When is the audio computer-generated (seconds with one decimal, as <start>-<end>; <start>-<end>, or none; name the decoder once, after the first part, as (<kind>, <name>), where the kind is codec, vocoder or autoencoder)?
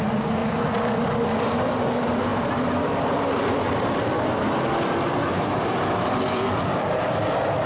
0.4-1.2 (vocoder, BigVGAN v2); 2.3-6.9